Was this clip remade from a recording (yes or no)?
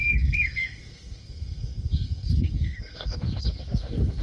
yes